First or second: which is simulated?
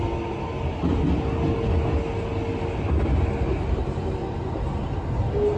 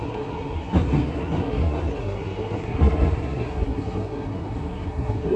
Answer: second